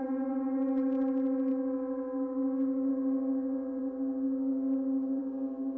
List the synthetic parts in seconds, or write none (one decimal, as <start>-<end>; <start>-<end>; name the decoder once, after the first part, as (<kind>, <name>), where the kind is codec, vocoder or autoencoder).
1.5-2.9 (autoencoder, DAC-VAE)